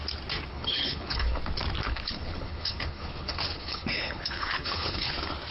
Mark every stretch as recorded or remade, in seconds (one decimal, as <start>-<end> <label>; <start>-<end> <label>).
0.0-0.5 recorded; 0.5-1.4 remade; 1.4-1.8 recorded; 1.8-5.1 remade; 5.1-5.5 recorded